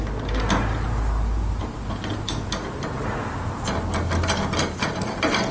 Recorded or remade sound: recorded